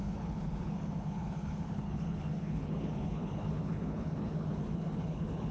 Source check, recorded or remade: remade